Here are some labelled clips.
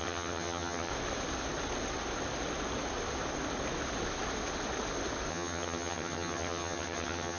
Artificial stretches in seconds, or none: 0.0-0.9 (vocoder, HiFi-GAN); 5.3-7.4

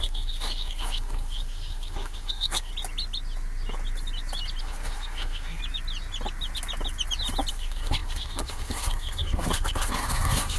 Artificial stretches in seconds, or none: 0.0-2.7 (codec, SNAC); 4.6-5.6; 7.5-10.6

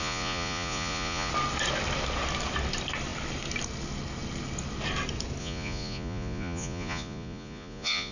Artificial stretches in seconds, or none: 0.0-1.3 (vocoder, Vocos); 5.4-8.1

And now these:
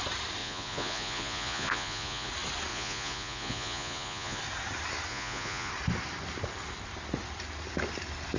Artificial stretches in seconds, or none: 0.4-2.3 (vocoder, Vocos); 2.7-4.4; 5.1-5.7

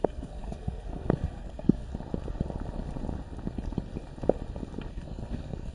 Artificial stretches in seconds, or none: 0.0-1.9 (codec, SNAC); 4.9-5.7

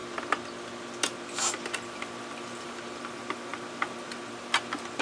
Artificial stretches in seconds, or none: none

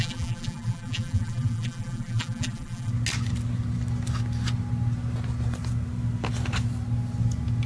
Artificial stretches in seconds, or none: 0.0-2.9 (vocoder, BigVGAN v2)

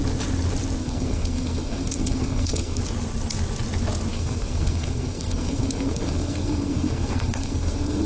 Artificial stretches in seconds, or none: 0.8-2.8 (codec, SNAC); 4.1-8.1